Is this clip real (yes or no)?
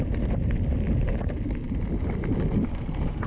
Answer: yes